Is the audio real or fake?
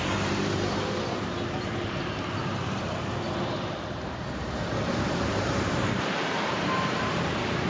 fake